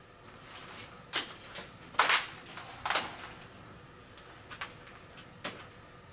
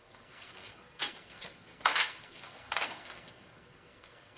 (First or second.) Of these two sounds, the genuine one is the first